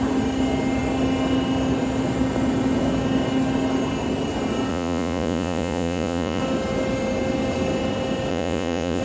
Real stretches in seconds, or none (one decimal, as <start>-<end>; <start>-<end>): 0.0-4.7; 6.4-8.3